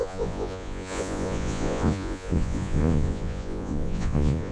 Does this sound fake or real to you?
fake